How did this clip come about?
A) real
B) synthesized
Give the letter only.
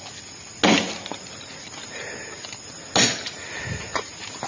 A